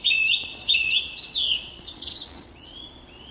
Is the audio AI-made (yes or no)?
yes